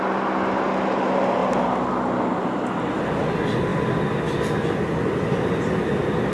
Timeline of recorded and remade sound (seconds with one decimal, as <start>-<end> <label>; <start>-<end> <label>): 0.0-1.4 recorded; 1.4-1.9 remade; 1.9-6.3 recorded